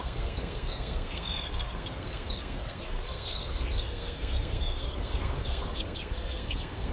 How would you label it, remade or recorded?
remade